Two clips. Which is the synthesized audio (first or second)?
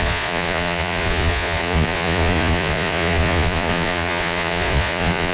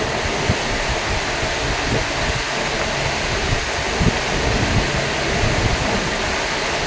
first